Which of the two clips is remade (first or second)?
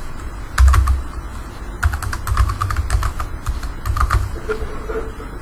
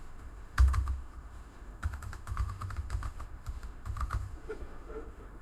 second